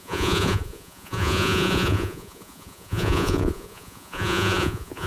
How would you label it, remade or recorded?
remade